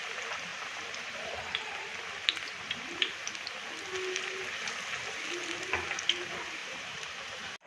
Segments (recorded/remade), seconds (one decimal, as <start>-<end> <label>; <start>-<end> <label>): 0.0-0.5 recorded; 0.5-1.9 remade; 1.9-6.6 recorded; 6.6-7.7 remade